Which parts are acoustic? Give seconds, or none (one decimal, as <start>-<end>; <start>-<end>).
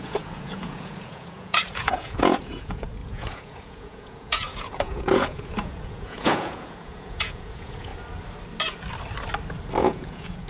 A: 7.9-9.8